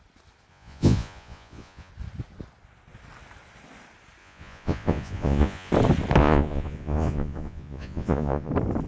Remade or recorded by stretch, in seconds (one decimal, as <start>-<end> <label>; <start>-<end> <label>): 0.0-0.5 recorded; 0.5-1.9 remade; 1.9-4.2 recorded; 4.2-5.7 remade; 5.7-6.2 recorded; 6.2-8.5 remade; 8.5-8.9 recorded